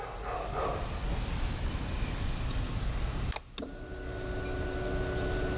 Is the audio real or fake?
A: real